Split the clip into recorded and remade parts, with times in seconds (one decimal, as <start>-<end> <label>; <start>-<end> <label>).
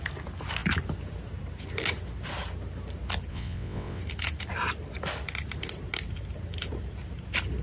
0.0-3.3 recorded; 3.3-4.0 remade; 4.0-7.6 recorded